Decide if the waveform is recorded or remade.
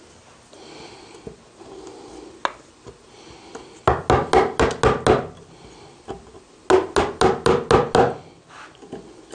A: recorded